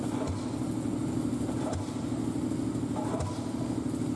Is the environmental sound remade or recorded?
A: recorded